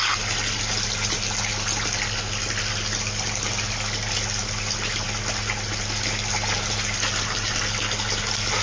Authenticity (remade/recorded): recorded